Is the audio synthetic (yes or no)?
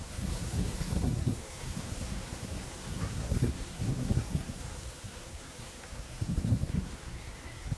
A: yes